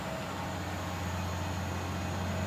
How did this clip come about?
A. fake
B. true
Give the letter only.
B